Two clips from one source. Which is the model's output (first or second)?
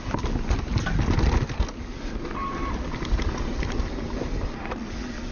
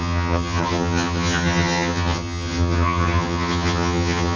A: second